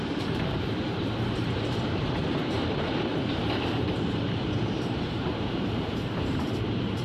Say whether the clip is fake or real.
fake